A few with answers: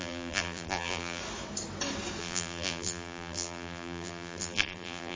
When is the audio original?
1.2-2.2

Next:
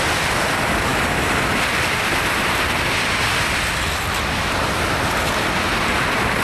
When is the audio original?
0.0-6.4

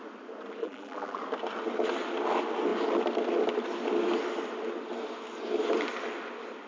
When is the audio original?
0.0-0.6; 1.2-6.7

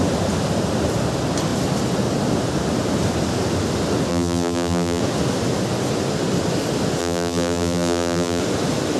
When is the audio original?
0.0-4.1; 5.0-7.0; 8.4-9.0

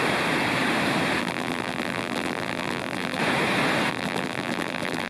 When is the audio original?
0.0-1.2; 3.2-3.9

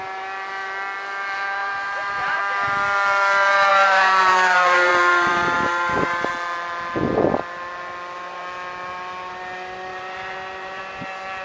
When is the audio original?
0.0-1.6; 2.4-3.7; 6.3-9.9; 10.8-11.4